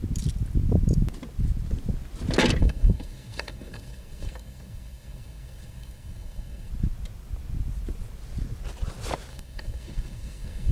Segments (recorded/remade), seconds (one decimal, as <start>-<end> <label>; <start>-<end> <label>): 0.0-2.6 recorded; 2.6-6.7 remade; 6.7-9.3 recorded; 9.3-10.7 remade